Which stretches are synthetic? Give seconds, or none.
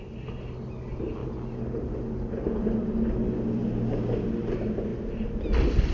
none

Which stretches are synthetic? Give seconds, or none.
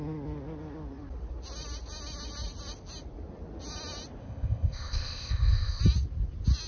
4.2-5.8 (codec, ZipCodec)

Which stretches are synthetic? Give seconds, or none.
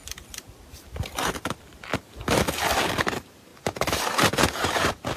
0.0-1.9 (vocoder, BigVGAN v2); 3.0-5.2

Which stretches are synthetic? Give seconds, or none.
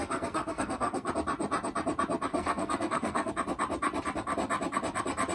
0.0-1.1 (codec, SNAC); 2.3-3.3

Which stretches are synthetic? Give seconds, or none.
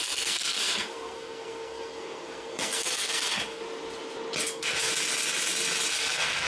0.0-3.6 (codec, SNAC); 4.4-4.9; 5.9-6.5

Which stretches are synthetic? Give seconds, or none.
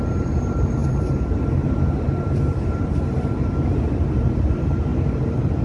0.0-4.9 (vocoder, BigVGAN v2)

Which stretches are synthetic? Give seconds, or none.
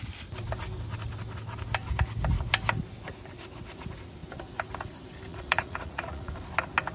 5.3-6.3 (vocoder, Vocos)